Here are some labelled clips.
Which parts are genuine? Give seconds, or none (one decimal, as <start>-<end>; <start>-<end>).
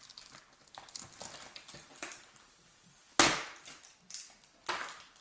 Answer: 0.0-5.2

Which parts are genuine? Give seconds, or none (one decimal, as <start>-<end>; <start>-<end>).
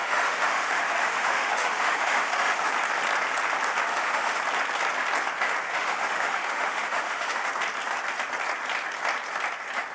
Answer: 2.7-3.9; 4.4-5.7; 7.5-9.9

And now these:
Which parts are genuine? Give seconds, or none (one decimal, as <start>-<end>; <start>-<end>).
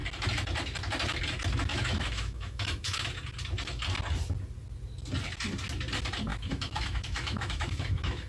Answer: 0.0-1.7; 3.1-6.3